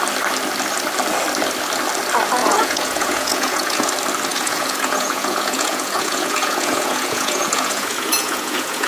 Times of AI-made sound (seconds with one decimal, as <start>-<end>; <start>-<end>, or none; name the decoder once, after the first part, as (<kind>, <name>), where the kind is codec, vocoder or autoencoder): 2.4-3.9 (vocoder, Vocos); 4.3-8.9